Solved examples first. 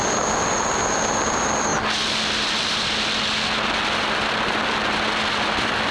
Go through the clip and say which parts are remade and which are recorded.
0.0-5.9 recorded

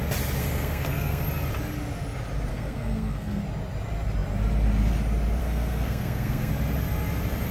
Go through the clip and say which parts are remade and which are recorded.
0.0-0.4 recorded; 0.4-1.2 remade; 1.2-2.5 recorded; 2.5-3.4 remade; 3.4-5.4 recorded; 5.4-6.5 remade; 6.5-7.5 recorded

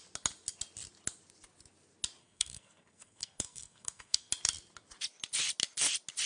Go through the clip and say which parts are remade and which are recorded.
0.0-2.2 recorded; 2.2-4.3 remade; 4.3-6.3 recorded

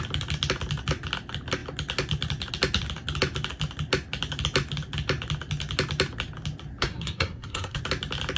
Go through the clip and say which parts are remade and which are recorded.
0.0-6.8 recorded; 6.8-7.8 remade; 7.8-8.4 recorded

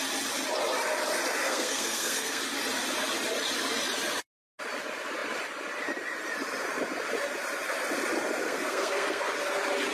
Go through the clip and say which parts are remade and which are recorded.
0.0-1.4 recorded; 1.4-2.4 remade; 2.4-8.4 recorded; 8.4-9.2 remade; 9.2-9.9 recorded